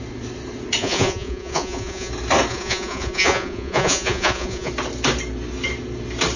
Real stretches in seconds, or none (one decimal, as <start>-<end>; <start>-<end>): 0.0-0.8; 2.1-2.5; 4.7-6.4